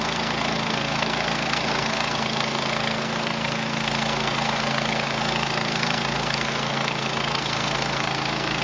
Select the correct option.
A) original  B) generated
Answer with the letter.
B